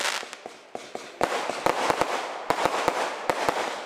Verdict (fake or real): real